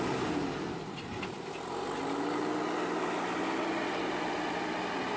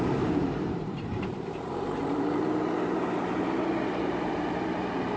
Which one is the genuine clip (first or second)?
first